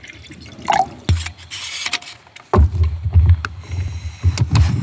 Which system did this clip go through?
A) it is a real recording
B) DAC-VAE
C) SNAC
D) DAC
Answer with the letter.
A